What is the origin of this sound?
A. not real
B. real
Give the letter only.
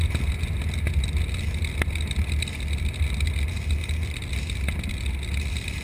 B